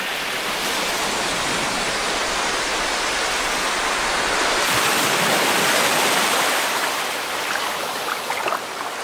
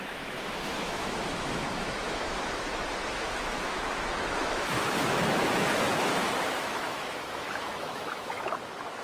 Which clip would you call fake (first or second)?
second